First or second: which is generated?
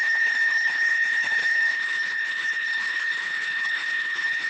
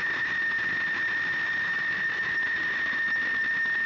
first